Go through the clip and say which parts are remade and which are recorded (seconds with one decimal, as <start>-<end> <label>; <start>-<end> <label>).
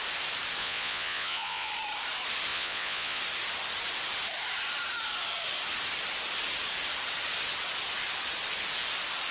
0.0-0.6 recorded; 0.6-1.7 remade; 1.7-2.5 recorded; 2.5-3.2 remade; 3.2-9.3 recorded